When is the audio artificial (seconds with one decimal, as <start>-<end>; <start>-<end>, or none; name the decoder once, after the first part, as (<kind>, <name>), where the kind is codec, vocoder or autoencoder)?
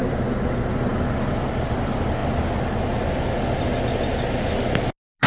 none